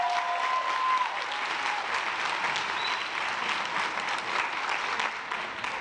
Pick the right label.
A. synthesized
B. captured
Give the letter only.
B